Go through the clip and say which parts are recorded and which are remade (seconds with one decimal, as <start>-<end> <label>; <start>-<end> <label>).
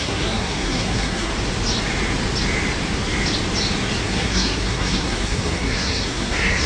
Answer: 0.0-1.3 remade; 1.3-4.0 recorded; 4.0-6.7 remade